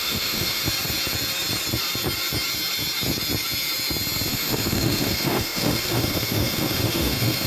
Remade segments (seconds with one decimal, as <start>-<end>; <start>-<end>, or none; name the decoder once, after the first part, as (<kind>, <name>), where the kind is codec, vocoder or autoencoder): 0.0-0.6 (autoencoder, DAC-VAE); 4.3-7.5